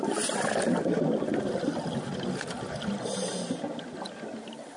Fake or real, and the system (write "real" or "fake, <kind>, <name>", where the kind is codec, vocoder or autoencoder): real